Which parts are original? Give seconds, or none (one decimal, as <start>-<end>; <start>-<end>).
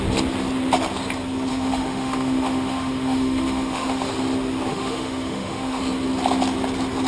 0.0-1.5; 4.1-4.7; 5.8-7.1